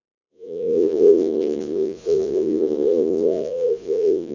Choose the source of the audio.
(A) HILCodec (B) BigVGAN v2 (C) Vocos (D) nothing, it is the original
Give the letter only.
C